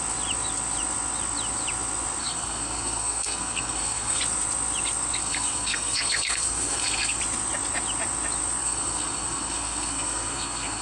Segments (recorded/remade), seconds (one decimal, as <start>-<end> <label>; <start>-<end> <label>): 0.0-2.2 recorded; 2.2-4.2 remade; 4.2-5.2 recorded; 5.2-7.2 remade; 7.2-8.6 recorded; 8.6-10.8 remade